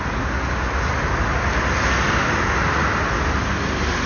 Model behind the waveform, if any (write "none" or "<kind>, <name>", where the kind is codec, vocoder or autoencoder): none